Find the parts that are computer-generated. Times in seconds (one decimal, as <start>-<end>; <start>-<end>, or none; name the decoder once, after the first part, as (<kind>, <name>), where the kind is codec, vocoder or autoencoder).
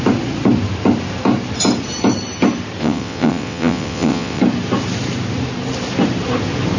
2.8-4.4 (vocoder, WaveNeXt)